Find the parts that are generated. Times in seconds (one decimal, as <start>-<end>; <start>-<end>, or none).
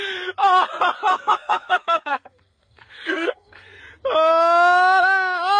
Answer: 1.1-3.8